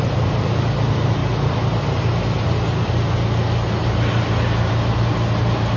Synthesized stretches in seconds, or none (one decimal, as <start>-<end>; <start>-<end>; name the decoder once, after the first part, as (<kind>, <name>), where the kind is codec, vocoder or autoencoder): none